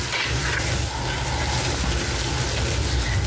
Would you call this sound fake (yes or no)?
no